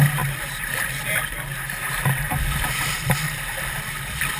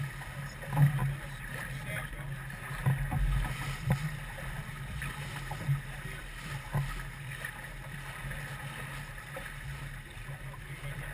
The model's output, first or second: first